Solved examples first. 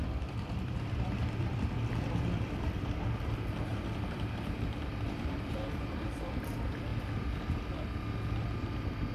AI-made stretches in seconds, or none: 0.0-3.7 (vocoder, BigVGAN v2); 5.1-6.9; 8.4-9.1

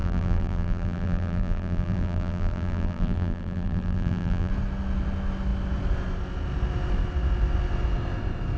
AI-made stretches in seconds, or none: 0.0-4.5 (vocoder, BigVGAN v2)